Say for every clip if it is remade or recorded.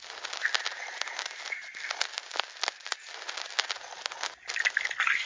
recorded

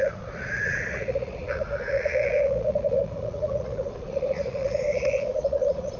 remade